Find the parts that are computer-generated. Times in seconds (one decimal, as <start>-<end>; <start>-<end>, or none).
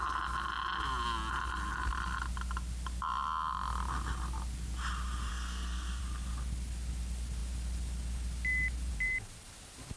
5.3-6.0